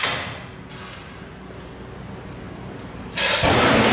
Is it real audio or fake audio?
real